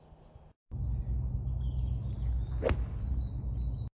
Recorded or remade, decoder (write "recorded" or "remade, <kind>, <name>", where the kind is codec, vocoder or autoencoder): recorded